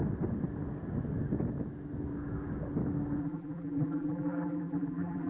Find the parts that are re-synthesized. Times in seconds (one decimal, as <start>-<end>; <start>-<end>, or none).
3.2-5.3